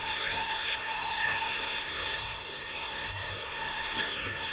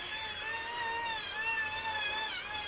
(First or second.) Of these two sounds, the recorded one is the second